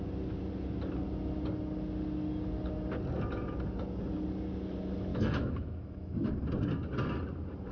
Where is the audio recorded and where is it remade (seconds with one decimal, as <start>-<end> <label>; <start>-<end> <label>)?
0.0-5.1 recorded; 5.1-6.3 remade; 6.3-7.7 recorded

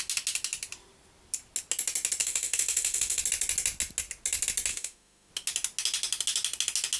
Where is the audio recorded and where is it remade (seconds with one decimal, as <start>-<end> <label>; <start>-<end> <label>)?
0.0-2.2 recorded; 2.2-3.2 remade; 3.2-4.7 recorded; 4.7-5.3 remade; 5.3-7.0 recorded

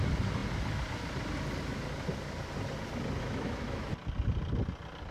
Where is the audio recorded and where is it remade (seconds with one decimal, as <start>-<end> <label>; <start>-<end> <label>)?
0.0-3.2 recorded; 3.2-3.9 remade; 3.9-5.1 recorded

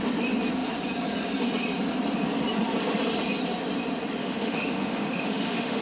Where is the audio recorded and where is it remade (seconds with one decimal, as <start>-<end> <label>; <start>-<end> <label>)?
0.0-4.2 recorded; 4.2-5.8 remade

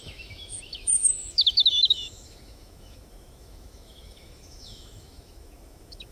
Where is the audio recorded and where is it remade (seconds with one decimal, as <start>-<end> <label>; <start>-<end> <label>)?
0.0-6.1 remade